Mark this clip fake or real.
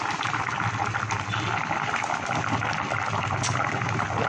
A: real